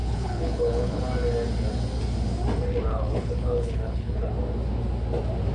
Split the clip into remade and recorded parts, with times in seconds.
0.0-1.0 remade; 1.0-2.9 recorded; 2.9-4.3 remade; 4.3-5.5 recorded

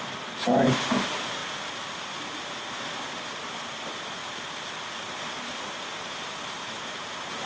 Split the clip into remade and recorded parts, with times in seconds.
0.0-1.4 remade; 1.4-2.2 recorded; 2.2-4.2 remade; 4.2-5.0 recorded; 5.0-7.5 remade

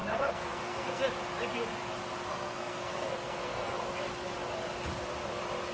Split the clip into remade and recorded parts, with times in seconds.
0.0-1.0 remade; 1.0-2.3 recorded; 2.3-3.8 remade; 3.8-5.7 recorded

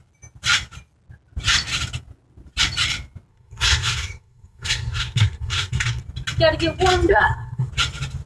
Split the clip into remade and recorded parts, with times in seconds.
0.0-3.3 recorded; 3.3-6.0 remade; 6.0-7.1 recorded; 7.1-7.7 remade; 7.7-8.3 recorded

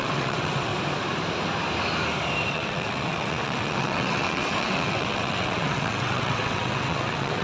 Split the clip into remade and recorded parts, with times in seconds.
0.0-0.7 remade; 0.7-2.5 recorded; 2.5-7.4 remade